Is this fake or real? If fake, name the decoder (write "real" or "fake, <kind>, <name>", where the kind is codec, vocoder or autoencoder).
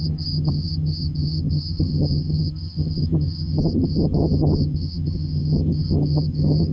fake, vocoder, HiFi-GAN